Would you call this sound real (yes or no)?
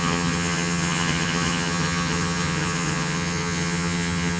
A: no